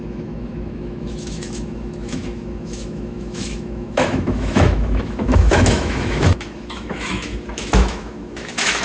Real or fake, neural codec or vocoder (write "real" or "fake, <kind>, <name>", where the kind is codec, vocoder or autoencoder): fake, autoencoder, DAC-VAE